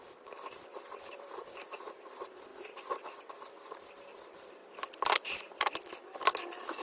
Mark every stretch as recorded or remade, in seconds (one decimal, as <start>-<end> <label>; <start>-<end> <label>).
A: 0.0-2.5 remade; 2.5-3.2 recorded; 3.2-6.8 remade